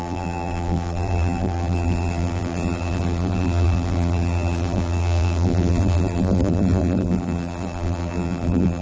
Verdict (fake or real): fake